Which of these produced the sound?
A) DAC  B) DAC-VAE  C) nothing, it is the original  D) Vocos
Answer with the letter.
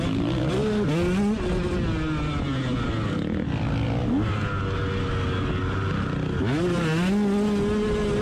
C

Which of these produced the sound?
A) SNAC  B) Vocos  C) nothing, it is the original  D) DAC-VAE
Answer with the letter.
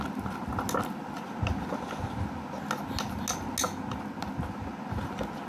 C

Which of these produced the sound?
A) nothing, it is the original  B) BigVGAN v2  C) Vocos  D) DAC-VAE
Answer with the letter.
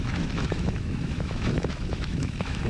D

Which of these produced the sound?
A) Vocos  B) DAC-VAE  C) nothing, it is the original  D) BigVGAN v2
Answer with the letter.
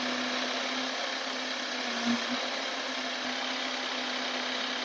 C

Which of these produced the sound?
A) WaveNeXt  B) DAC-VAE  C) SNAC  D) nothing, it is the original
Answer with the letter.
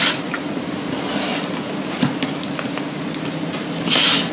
D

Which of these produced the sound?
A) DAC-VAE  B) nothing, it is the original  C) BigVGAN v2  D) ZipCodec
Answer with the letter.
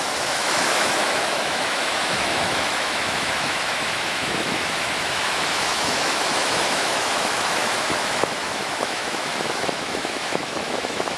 A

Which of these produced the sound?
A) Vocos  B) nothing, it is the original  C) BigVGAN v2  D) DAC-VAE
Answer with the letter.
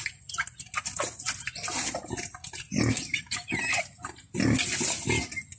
B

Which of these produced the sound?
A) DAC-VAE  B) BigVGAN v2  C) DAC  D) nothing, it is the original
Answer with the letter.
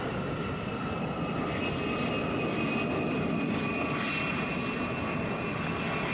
D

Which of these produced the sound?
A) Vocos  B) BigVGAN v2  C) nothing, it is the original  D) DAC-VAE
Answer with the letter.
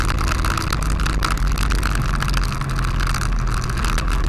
C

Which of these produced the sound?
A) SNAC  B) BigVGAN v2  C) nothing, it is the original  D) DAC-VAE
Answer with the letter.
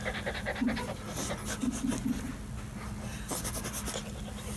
C